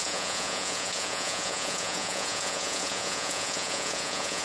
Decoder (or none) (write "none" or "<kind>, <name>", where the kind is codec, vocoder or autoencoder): vocoder, Vocos